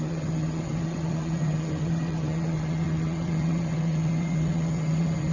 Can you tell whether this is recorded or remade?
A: remade